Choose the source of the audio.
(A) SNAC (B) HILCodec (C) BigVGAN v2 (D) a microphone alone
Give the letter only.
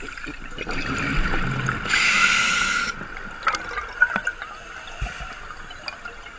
D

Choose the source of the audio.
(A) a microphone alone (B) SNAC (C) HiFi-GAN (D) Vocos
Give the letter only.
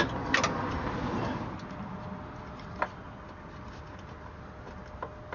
A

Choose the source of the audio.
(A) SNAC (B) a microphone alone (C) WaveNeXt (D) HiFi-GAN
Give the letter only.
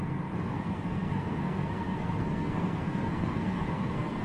A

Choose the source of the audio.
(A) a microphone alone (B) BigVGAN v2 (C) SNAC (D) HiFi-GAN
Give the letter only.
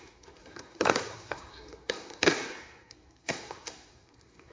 C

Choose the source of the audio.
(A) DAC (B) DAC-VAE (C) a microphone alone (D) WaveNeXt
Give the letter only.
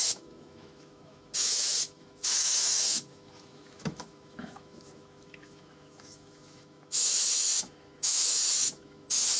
B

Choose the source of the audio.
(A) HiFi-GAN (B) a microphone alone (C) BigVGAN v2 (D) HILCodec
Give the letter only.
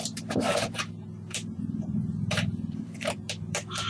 C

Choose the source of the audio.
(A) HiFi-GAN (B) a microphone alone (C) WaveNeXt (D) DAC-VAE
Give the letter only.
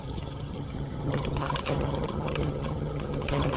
A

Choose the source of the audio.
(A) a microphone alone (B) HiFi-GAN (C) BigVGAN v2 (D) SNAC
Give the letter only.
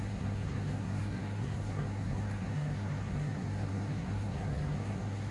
D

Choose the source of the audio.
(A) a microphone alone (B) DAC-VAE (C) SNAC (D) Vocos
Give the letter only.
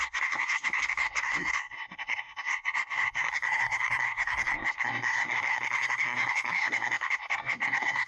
C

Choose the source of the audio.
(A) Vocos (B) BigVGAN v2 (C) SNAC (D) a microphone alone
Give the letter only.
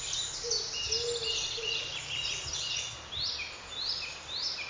D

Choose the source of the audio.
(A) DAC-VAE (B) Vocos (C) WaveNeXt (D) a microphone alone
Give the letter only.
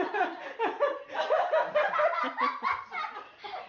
D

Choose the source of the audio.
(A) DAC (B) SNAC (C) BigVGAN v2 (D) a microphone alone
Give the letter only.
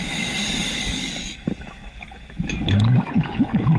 A